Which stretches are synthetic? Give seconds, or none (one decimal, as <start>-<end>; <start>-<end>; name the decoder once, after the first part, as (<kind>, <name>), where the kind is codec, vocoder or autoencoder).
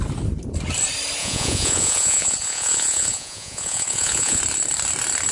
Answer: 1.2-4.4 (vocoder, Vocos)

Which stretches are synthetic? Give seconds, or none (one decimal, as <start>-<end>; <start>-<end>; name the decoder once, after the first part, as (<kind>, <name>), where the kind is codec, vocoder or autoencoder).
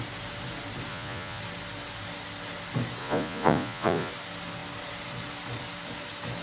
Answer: 0.9-1.4 (vocoder, Vocos); 3.0-4.1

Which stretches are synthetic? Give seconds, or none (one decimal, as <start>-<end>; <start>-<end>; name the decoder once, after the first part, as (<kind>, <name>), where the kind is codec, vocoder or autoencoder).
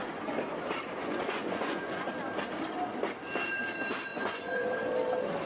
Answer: 1.0-2.1 (vocoder, Vocos); 4.1-4.7